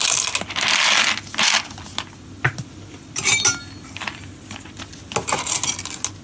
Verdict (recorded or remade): recorded